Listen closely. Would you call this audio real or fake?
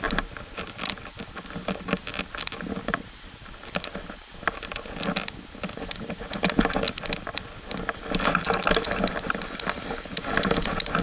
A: real